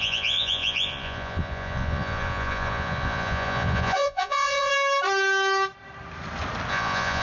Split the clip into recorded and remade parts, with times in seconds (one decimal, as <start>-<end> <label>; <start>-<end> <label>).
0.0-4.7 remade; 4.7-6.7 recorded; 6.7-7.2 remade